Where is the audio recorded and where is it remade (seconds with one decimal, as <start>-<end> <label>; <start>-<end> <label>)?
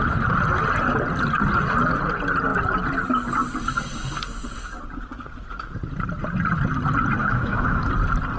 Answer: 0.0-7.2 recorded; 7.2-7.9 remade; 7.9-8.4 recorded